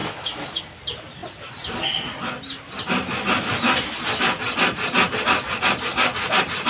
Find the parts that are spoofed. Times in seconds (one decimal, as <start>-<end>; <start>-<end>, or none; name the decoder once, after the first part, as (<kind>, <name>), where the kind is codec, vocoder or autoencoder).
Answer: 0.0-0.6 (autoencoder, DAC-VAE)